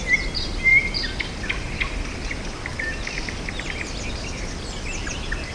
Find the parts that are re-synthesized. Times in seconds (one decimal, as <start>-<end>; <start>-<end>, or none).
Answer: none